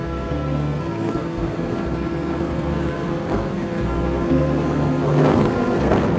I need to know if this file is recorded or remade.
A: remade